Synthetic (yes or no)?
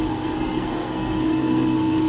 yes